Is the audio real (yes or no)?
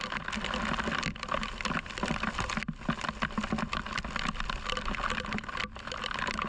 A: yes